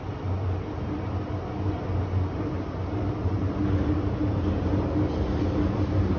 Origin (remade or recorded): recorded